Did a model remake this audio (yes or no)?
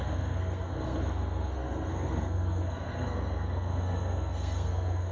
yes